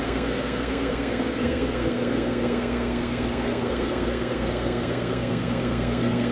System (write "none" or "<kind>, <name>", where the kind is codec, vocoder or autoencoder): codec, SNAC